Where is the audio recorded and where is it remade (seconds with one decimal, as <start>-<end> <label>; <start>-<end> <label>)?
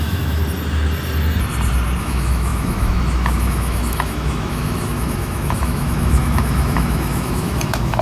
0.0-0.4 remade; 0.4-2.0 recorded; 2.0-8.0 remade